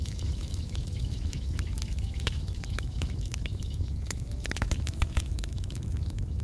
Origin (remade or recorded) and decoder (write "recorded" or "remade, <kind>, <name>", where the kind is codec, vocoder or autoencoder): remade, autoencoder, DAC-VAE